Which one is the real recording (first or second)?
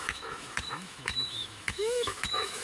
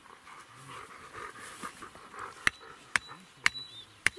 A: second